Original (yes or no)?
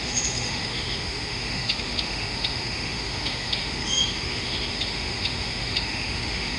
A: no